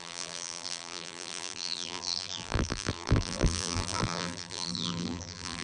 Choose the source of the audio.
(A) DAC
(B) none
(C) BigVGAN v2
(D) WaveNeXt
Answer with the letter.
C